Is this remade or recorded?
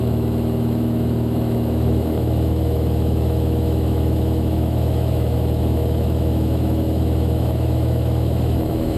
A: remade